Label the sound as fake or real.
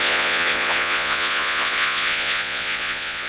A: fake